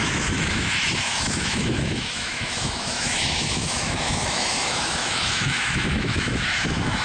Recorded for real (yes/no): no